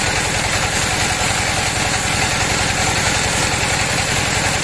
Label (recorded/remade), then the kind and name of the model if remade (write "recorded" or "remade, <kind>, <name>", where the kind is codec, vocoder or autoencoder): recorded